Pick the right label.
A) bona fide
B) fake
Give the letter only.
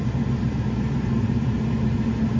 B